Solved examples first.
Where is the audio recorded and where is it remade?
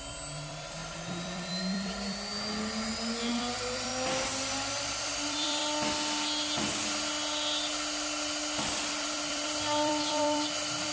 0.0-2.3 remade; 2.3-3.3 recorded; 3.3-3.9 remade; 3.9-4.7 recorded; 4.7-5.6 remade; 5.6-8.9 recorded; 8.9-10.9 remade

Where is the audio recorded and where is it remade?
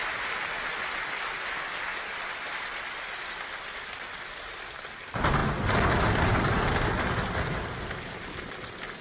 0.0-9.0 recorded